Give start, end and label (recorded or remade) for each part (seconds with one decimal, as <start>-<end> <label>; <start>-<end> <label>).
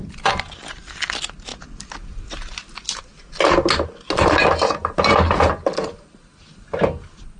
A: 0.0-7.4 recorded